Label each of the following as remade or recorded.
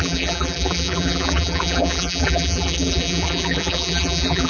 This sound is remade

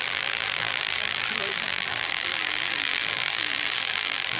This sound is remade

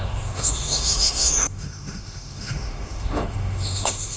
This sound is remade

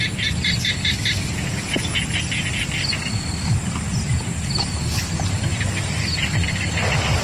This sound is recorded